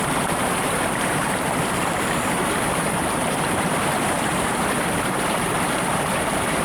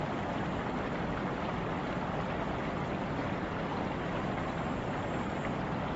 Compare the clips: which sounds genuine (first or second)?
second